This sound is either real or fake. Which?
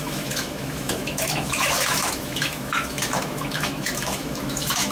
fake